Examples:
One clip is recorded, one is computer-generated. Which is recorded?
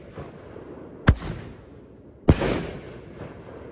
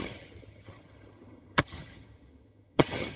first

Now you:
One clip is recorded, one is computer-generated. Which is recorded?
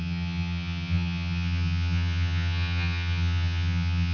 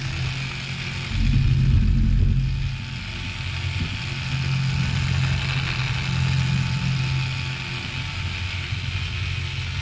second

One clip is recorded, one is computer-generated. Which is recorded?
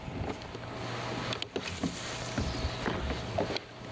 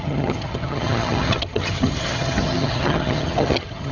first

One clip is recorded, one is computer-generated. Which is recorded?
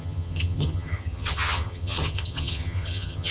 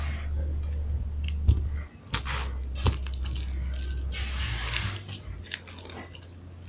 second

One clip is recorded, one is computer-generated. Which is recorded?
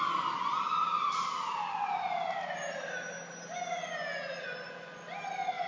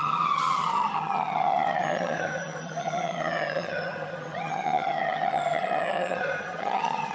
first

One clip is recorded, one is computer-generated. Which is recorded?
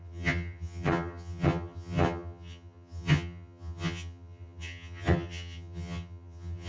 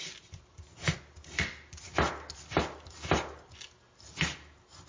second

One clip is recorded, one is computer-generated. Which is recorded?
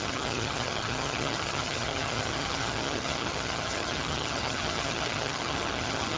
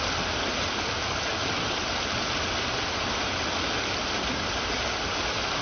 second